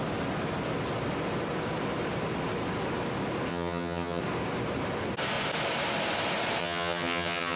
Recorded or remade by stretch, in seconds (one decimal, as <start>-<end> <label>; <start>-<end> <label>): 0.0-3.5 recorded; 3.5-4.2 remade; 4.2-6.6 recorded; 6.6-7.6 remade